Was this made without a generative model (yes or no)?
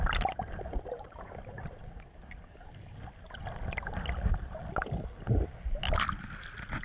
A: yes